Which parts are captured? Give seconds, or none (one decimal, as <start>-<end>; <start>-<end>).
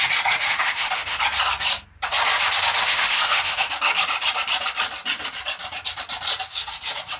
0.0-0.5; 1.2-2.8; 3.7-7.2